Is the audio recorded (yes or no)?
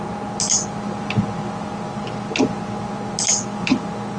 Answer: yes